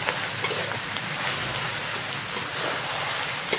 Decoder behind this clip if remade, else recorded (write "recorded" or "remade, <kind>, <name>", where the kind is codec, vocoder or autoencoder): recorded